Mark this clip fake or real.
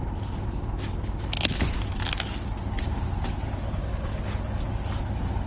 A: real